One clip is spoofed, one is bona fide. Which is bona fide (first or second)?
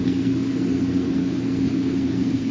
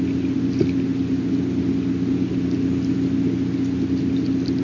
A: second